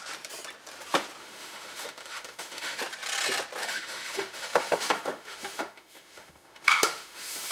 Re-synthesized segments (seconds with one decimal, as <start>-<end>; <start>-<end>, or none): 1.2-2.8; 3.6-7.5